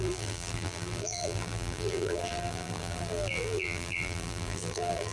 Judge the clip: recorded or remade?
remade